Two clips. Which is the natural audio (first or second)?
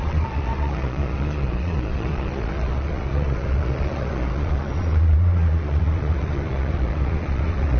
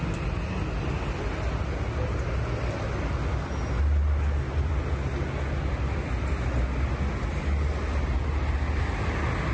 second